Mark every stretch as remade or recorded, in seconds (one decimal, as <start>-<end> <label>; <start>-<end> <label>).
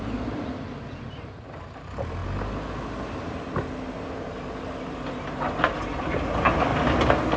0.0-2.2 remade; 2.2-6.2 recorded; 6.2-6.7 remade; 6.7-7.4 recorded